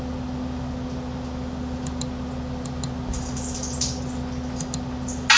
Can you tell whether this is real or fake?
real